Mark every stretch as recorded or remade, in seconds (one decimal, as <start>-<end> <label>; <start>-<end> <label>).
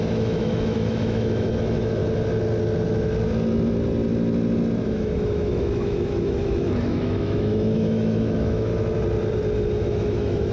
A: 0.0-2.0 remade; 2.0-4.8 recorded; 4.8-8.7 remade; 8.7-9.8 recorded; 9.8-10.5 remade